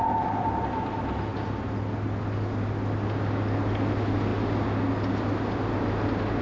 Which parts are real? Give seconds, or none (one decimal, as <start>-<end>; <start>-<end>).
0.0-6.4